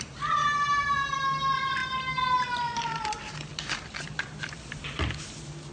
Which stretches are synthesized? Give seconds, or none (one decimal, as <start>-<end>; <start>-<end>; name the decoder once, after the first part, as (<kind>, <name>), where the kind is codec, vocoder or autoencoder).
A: 3.5-5.1 (vocoder, BigVGAN v2)